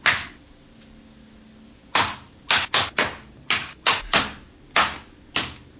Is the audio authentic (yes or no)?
yes